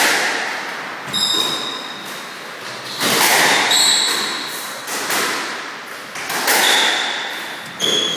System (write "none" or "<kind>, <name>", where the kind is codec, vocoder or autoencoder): none